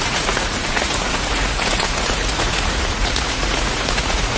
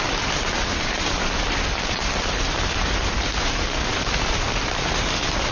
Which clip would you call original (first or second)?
second